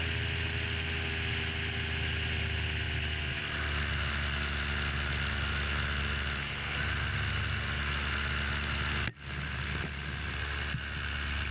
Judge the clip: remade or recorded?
recorded